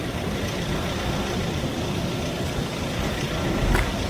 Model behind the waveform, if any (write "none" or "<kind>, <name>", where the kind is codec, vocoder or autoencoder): none